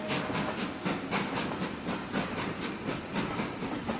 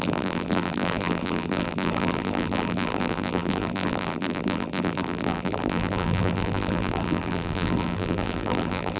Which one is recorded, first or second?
first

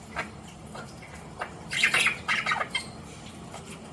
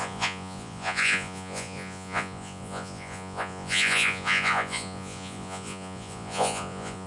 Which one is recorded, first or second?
first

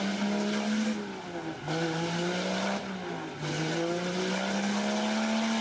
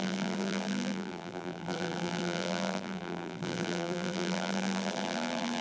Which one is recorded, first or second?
first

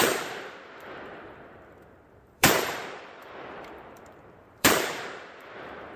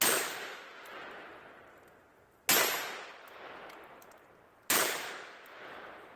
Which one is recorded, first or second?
second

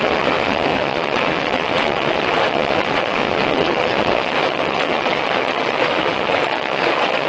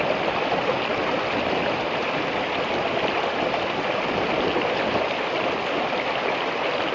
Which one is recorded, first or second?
second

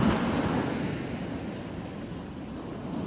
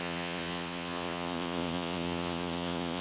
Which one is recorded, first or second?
first